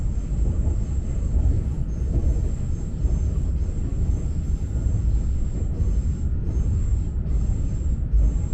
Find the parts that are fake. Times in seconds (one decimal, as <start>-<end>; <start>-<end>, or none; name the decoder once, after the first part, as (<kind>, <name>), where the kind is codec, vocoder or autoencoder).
none